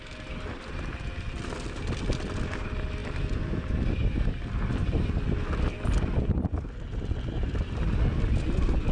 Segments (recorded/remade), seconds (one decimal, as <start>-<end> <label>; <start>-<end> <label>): 0.0-8.9 recorded